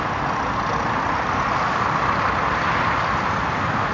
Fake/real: real